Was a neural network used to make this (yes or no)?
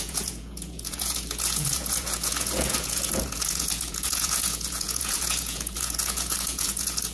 yes